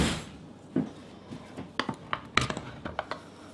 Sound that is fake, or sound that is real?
real